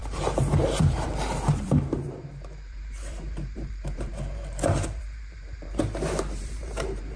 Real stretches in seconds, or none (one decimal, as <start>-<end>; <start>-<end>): none